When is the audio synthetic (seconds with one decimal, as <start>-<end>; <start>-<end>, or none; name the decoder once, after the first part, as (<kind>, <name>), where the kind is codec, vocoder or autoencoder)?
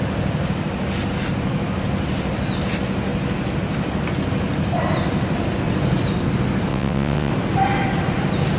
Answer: 6.7-7.3 (vocoder, WaveNeXt)